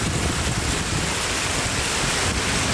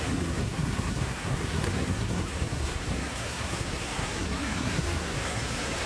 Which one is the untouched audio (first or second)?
first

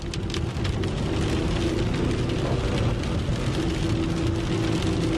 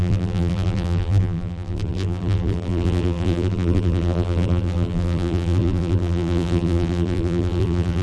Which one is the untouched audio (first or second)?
first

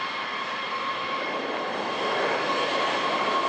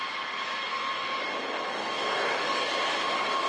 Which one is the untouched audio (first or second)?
second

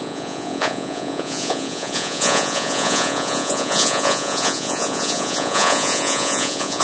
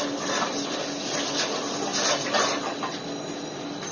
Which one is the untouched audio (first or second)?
second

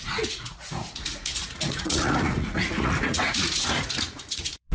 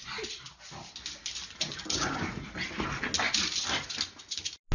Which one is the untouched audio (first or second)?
second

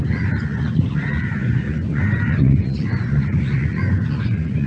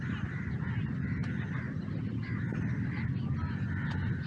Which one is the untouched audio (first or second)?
second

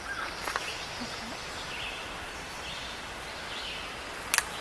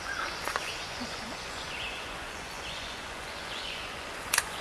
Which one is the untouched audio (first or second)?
first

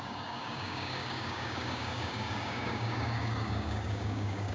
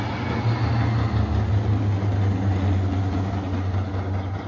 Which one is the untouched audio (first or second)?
second